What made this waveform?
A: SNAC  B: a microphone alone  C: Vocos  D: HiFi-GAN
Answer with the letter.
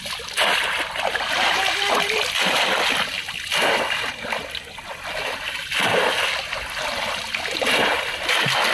B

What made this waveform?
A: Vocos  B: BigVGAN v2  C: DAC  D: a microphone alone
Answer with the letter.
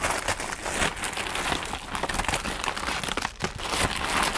D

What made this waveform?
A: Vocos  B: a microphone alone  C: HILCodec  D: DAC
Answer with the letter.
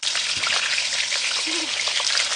B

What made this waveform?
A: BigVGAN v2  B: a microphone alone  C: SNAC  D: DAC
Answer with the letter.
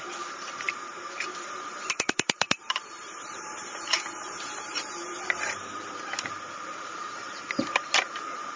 A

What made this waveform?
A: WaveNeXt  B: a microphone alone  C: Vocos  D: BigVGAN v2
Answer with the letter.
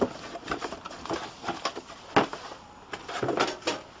B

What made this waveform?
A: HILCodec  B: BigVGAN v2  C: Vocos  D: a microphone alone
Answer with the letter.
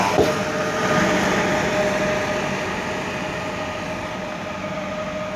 D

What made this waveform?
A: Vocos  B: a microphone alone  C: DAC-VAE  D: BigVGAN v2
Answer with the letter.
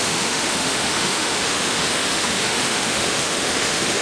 C